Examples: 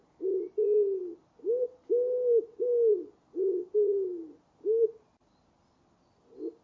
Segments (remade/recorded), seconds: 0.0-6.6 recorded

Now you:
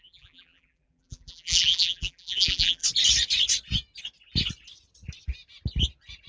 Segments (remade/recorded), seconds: 0.0-2.8 remade; 2.8-6.3 recorded

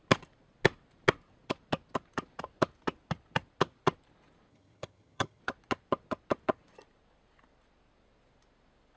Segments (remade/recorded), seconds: 0.0-4.5 recorded; 4.5-5.4 remade; 5.4-9.0 recorded

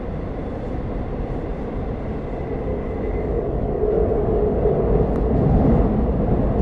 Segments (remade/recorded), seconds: 0.0-2.7 recorded; 2.7-4.4 remade; 4.4-6.6 recorded

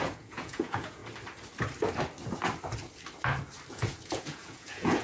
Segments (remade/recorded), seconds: 0.0-1.0 remade; 1.0-3.7 recorded; 3.7-5.0 remade

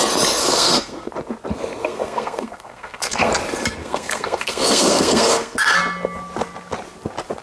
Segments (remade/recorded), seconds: 0.0-0.4 recorded; 0.4-1.1 remade; 1.1-1.8 recorded; 1.8-3.3 remade; 3.3-3.8 recorded; 3.8-5.8 remade; 5.8-7.4 recorded

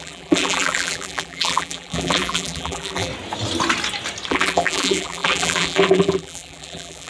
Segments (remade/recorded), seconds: 0.0-3.1 remade; 3.1-4.3 recorded; 4.3-7.1 remade